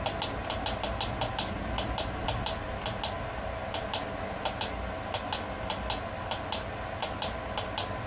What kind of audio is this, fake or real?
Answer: real